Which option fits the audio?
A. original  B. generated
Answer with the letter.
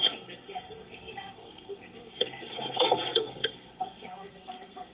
B